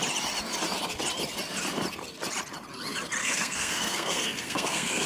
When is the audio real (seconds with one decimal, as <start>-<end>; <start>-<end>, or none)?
0.0-3.2